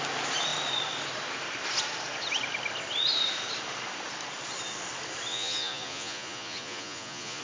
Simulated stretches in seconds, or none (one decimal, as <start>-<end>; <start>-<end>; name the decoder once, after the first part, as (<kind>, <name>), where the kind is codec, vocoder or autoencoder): 5.3-7.4 (vocoder, Vocos)